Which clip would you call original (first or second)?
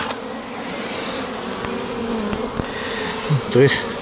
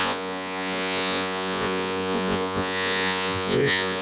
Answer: first